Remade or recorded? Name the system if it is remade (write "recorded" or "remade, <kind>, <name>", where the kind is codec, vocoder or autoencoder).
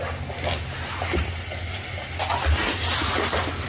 recorded